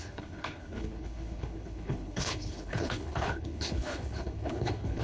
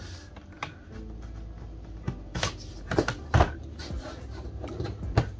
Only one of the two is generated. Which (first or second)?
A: first